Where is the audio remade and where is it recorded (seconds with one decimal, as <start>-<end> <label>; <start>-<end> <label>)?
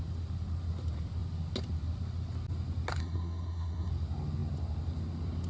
0.0-3.0 recorded; 3.0-3.9 remade; 3.9-5.5 recorded